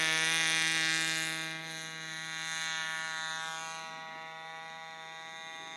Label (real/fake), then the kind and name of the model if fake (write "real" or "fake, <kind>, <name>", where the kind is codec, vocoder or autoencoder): real